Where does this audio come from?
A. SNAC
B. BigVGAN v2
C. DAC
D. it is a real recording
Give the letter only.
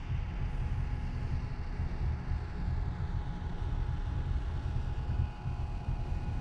D